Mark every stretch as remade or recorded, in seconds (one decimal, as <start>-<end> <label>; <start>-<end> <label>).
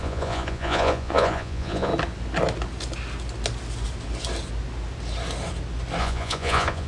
0.0-1.9 remade; 1.9-6.0 recorded; 6.0-6.9 remade